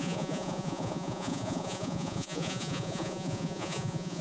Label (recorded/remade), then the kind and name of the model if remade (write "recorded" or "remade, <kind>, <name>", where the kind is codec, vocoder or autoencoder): remade, vocoder, Vocos